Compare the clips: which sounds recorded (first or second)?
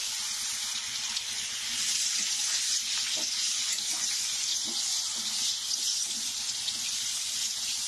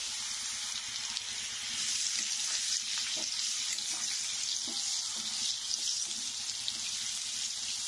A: second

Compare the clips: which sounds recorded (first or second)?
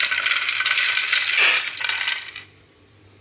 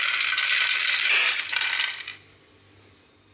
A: second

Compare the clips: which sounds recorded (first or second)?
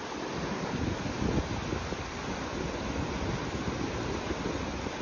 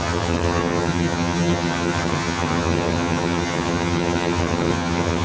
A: first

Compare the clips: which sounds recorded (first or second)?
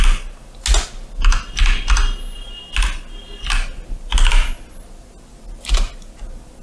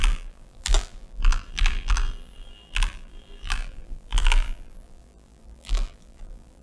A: first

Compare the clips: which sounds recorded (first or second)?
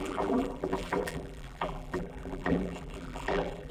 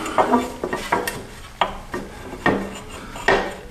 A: second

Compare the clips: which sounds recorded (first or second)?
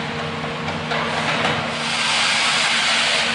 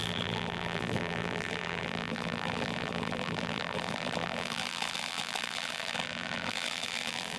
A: first